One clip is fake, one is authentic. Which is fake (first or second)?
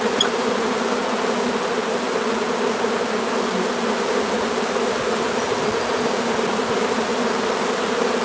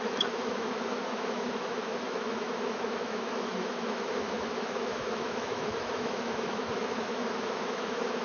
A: second